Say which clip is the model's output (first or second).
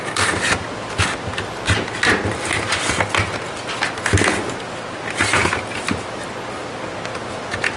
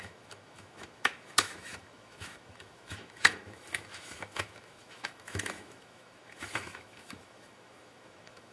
second